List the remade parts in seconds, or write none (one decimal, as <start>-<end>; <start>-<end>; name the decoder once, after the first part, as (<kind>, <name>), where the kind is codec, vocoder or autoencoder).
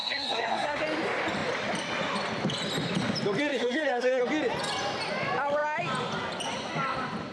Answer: 0.0-0.8 (codec, SNAC); 3.5-4.2